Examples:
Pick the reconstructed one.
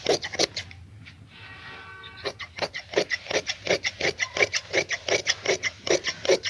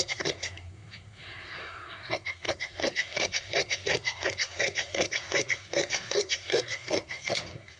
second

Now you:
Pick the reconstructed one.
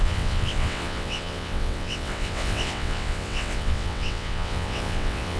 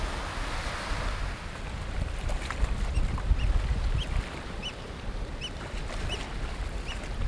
first